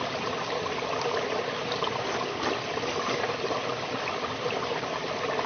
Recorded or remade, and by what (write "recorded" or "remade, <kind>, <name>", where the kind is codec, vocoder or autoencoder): recorded